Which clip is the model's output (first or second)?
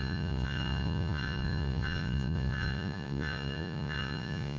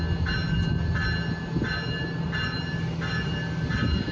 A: first